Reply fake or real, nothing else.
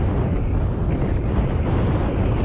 real